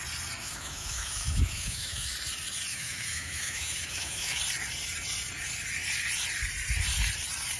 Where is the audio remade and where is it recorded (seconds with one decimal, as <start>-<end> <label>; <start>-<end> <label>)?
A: 0.0-0.4 recorded; 0.4-2.1 remade; 2.1-2.7 recorded; 2.7-4.4 remade; 4.4-7.6 recorded

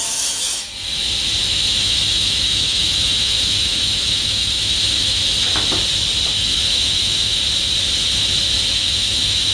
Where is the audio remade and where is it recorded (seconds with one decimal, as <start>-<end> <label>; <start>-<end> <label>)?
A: 0.0-0.7 remade; 0.7-1.4 recorded; 1.4-5.2 remade; 5.2-6.4 recorded; 6.4-7.4 remade; 7.4-8.7 recorded; 8.7-9.5 remade

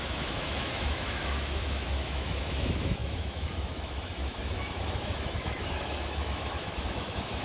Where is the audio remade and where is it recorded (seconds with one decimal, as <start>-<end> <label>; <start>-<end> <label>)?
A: 0.0-7.4 remade

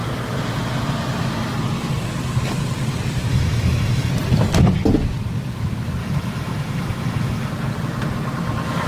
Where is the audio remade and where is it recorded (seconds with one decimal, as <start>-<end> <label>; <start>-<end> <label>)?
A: 0.0-3.3 recorded; 3.3-4.1 remade; 4.1-6.0 recorded; 6.0-7.5 remade; 7.5-8.9 recorded

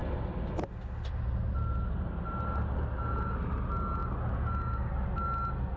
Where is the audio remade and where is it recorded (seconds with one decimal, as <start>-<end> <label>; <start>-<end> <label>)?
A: 0.0-5.8 recorded